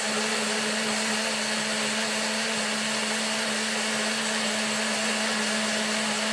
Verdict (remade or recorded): recorded